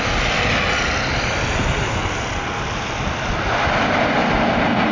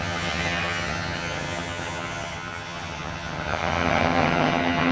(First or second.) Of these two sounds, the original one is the first